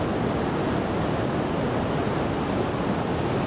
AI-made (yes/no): no